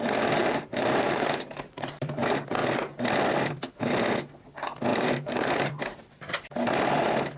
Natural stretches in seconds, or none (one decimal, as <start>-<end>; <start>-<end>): 0.0-0.4; 2.2-4.9; 5.8-7.4